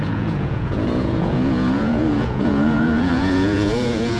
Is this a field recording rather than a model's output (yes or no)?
no